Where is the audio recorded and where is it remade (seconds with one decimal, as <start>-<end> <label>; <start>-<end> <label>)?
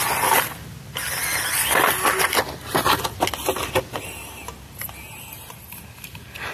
0.0-6.5 recorded